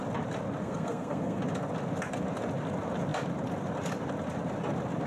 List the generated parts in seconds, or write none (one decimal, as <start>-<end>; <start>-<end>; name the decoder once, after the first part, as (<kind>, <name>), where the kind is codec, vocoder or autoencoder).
0.6-1.4 (codec, SNAC)